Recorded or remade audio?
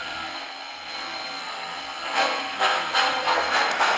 remade